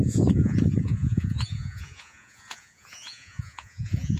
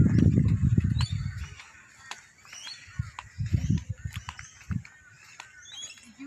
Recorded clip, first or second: second